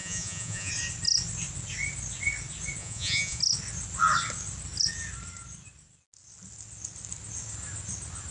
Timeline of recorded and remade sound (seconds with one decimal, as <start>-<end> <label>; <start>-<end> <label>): 0.0-0.7 remade; 0.7-2.8 recorded; 2.8-3.4 remade; 3.4-8.3 recorded